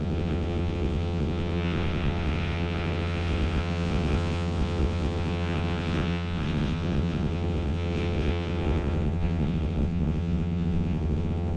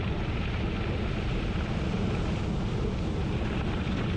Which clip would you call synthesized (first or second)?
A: first